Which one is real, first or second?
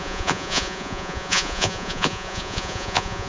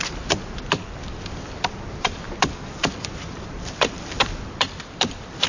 second